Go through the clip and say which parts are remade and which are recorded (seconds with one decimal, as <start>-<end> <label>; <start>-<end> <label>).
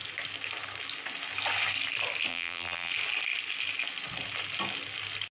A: 0.0-2.3 recorded; 2.3-2.9 remade; 2.9-5.4 recorded